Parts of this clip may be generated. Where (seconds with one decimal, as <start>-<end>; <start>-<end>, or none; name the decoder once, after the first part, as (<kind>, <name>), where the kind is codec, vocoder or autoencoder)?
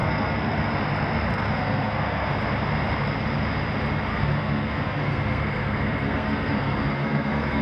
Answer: 0.0-0.7 (codec, SNAC); 1.3-2.3; 4.1-7.6